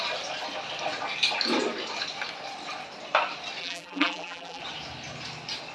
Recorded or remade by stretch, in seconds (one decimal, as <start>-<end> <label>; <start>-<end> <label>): 0.0-3.6 recorded; 3.6-4.6 remade; 4.6-5.7 recorded